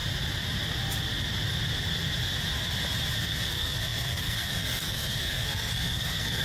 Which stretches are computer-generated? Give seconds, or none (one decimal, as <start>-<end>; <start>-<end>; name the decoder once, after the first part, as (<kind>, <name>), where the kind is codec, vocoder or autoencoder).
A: 3.2-6.4 (codec, SNAC)